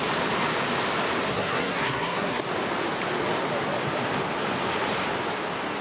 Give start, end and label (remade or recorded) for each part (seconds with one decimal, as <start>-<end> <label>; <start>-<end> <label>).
0.0-1.3 recorded; 1.3-2.4 remade; 2.4-5.8 recorded